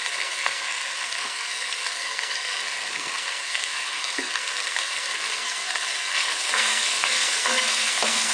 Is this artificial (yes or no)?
yes